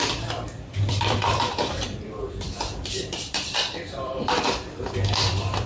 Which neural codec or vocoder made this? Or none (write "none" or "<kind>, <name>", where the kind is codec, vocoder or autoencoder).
vocoder, BigVGAN v2